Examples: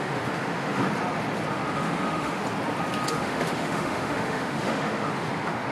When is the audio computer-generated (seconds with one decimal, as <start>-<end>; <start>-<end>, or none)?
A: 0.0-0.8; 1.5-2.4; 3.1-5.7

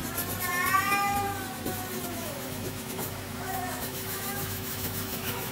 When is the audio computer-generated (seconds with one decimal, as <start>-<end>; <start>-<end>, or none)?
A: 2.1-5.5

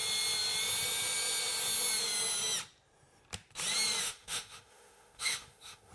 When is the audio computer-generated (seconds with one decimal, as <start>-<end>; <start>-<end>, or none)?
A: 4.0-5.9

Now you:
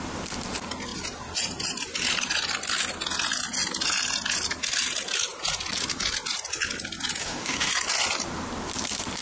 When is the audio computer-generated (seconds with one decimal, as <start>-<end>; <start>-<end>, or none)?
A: 7.2-7.7

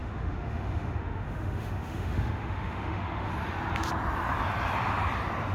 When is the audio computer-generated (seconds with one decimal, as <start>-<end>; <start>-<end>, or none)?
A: 0.0-3.3

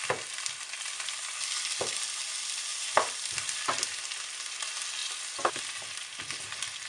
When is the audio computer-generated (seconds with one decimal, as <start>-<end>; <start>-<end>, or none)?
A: none